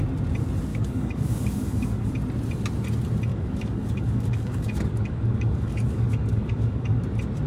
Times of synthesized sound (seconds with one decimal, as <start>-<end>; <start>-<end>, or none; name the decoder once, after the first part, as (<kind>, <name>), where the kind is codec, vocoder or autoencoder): 0.7-2.1 (codec, DAC); 3.3-7.0